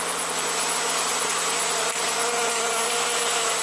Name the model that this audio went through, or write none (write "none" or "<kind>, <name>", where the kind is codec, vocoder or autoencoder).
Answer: none